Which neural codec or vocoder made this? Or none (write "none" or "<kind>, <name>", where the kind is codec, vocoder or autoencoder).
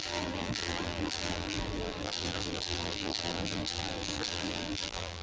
vocoder, BigVGAN v2